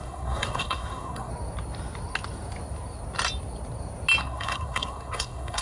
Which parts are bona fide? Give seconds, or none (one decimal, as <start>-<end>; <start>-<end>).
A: 1.3-4.2